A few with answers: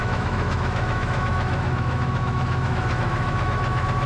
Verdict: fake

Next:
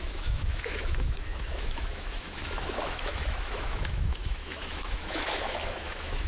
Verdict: fake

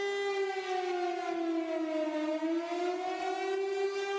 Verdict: real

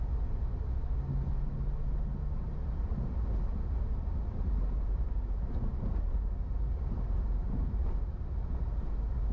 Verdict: real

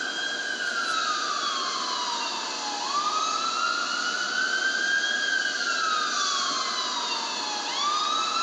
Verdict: real